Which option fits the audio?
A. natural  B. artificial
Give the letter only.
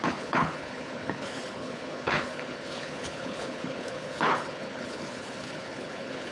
B